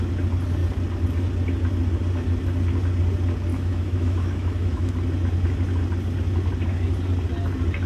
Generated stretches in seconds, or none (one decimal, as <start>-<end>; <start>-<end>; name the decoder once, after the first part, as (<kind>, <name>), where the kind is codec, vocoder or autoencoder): 3.5-4.9 (autoencoder, DAC-VAE)